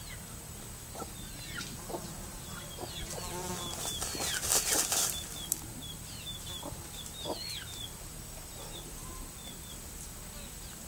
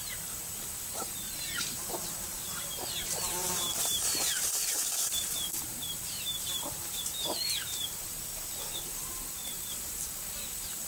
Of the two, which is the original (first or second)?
first